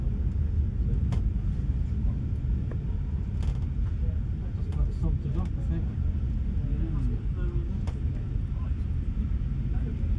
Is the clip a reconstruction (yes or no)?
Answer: no